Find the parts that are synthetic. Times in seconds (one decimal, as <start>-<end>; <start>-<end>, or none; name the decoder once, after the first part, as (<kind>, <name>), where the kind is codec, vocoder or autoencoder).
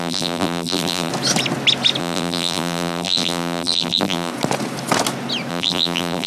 0.0-1.1 (vocoder, BigVGAN v2); 2.0-4.3; 5.5-6.3